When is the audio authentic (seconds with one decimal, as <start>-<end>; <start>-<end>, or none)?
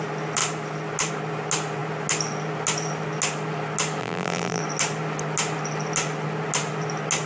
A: 0.0-4.0; 4.6-7.3